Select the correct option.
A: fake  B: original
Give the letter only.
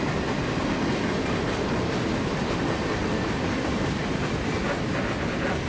B